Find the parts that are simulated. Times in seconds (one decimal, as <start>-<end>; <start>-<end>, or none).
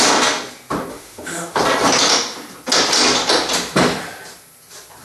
0.9-1.6